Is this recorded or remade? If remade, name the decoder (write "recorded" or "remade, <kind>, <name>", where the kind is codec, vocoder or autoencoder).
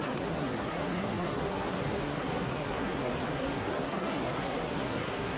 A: remade, codec, SNAC